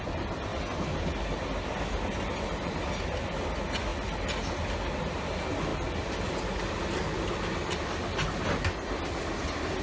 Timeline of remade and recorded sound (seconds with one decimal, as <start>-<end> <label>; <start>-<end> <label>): 0.0-9.8 recorded